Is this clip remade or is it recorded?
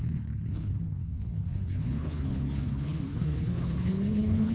remade